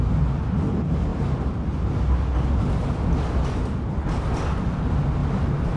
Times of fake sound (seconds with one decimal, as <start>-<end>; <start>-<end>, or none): 5.2-5.8